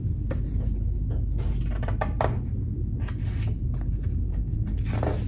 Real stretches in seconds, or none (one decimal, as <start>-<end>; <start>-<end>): 0.0-4.3; 4.8-5.3